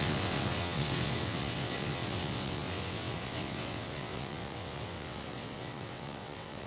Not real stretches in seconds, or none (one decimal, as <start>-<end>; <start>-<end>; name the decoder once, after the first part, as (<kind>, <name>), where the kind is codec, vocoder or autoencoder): 0.0-6.7 (vocoder, WaveNeXt)